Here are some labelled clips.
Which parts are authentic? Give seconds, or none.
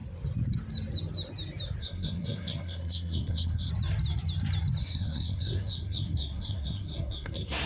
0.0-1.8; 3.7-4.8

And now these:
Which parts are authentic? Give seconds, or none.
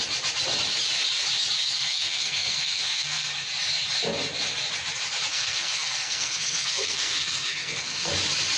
0.0-1.6; 3.3-5.3; 8.1-8.6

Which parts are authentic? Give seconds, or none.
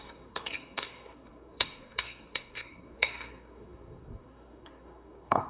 none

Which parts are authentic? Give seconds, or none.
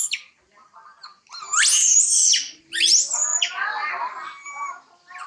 0.0-5.3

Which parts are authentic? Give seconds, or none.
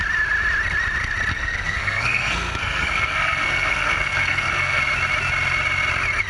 0.0-1.3; 4.8-6.3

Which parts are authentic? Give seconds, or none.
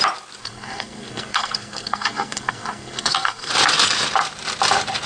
0.0-0.4; 3.5-5.1